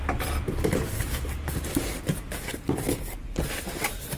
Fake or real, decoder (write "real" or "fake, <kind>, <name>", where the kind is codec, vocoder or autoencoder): real